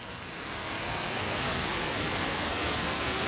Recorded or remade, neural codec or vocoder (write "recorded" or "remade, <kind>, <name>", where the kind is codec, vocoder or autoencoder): remade, codec, SNAC